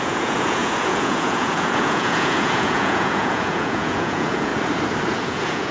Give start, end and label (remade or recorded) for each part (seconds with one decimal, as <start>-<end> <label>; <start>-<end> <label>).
0.0-4.5 remade; 4.5-5.2 recorded; 5.2-5.7 remade